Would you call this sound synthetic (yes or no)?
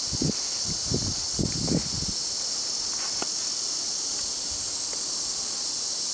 no